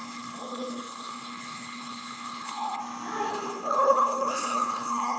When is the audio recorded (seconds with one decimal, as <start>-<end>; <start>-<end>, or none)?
2.8-3.3